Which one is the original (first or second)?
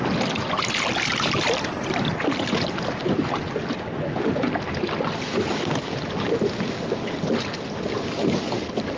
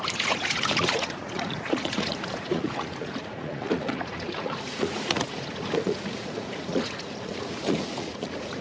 first